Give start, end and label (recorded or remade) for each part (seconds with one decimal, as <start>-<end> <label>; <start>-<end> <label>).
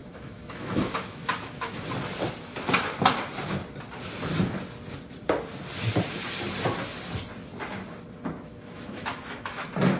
0.0-1.8 remade; 1.8-8.5 recorded; 8.5-9.5 remade; 9.5-10.0 recorded